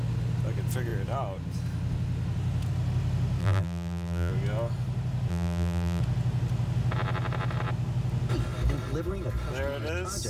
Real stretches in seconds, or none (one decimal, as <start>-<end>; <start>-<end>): 0.0-3.4; 4.3-5.3; 6.0-10.3